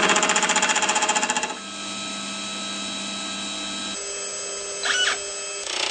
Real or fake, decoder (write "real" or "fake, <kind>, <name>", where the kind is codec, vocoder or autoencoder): real